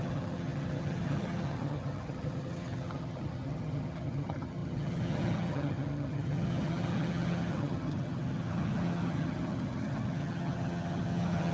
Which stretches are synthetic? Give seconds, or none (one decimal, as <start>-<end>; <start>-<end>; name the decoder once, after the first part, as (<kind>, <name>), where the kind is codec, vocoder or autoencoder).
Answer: 0.0-11.5 (vocoder, HiFi-GAN)